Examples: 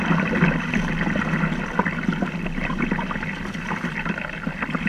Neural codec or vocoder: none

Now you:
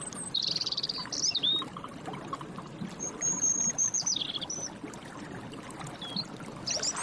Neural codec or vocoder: vocoder, BigVGAN v2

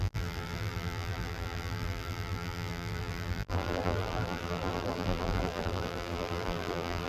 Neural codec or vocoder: vocoder, BigVGAN v2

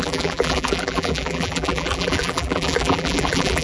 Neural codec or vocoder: vocoder, BigVGAN v2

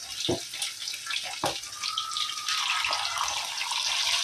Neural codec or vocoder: none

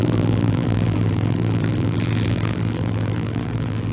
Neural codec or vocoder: vocoder, BigVGAN v2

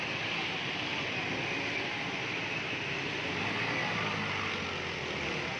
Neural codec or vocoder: none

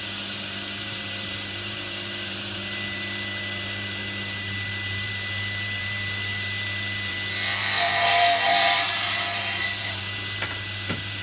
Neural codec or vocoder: vocoder, BigVGAN v2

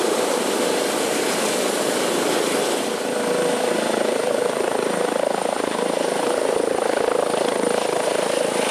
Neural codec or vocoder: vocoder, BigVGAN v2